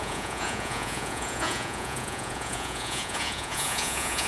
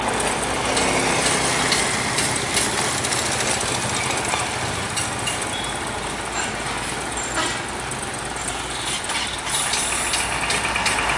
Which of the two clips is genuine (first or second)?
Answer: second